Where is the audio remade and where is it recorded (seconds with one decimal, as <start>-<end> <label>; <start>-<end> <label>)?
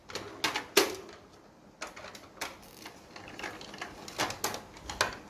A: 0.0-5.3 recorded